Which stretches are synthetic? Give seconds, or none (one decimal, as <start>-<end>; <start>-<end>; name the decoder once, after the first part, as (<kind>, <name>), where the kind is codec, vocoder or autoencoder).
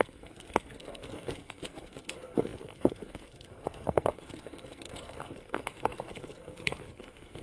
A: 0.0-7.4 (codec, SNAC)